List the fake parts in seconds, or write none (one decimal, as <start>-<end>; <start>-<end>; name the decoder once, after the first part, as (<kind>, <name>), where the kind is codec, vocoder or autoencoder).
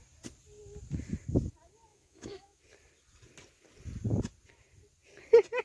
1.9-2.6 (autoencoder, DAC-VAE)